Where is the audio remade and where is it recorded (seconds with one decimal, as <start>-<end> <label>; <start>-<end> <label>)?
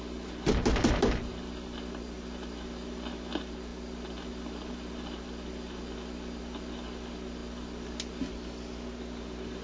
0.0-9.6 recorded